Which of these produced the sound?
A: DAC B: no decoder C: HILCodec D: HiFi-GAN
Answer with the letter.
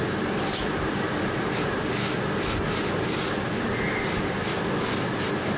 B